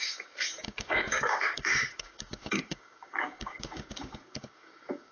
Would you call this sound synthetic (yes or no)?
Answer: yes